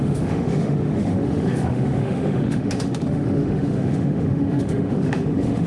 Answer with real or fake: fake